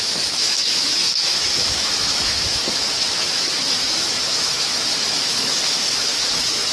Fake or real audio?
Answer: fake